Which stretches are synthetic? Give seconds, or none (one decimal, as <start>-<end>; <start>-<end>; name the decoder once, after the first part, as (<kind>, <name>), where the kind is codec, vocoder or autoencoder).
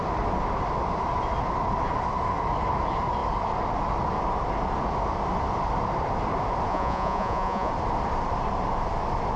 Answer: 6.7-7.7 (vocoder, Vocos)